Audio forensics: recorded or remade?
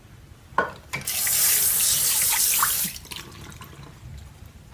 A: recorded